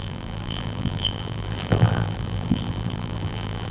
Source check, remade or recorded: remade